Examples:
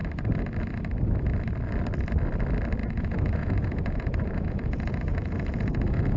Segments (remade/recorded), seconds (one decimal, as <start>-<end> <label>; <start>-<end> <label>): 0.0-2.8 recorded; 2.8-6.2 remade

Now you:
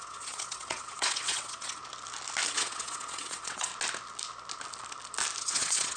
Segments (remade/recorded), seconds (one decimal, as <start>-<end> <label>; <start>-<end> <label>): 0.0-1.8 remade; 1.8-2.5 recorded; 2.5-3.7 remade; 3.7-5.4 recorded; 5.4-6.0 remade

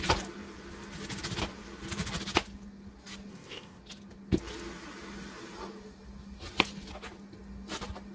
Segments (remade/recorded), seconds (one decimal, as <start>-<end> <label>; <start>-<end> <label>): 0.0-3.3 recorded; 3.3-3.8 remade; 3.8-8.1 recorded

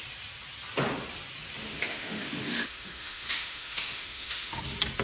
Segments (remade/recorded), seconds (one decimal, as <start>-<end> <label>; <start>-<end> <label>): 0.0-1.6 recorded; 1.6-4.6 remade; 4.6-5.0 recorded

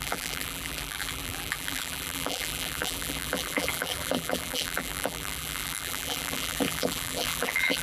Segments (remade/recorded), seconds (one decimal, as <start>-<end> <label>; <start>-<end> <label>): 0.0-7.8 remade

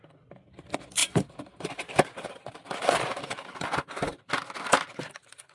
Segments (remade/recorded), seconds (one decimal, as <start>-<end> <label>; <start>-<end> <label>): 0.0-1.0 recorded; 1.0-4.3 remade; 4.3-5.5 recorded